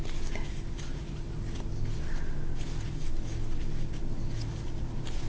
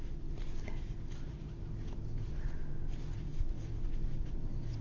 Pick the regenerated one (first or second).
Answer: second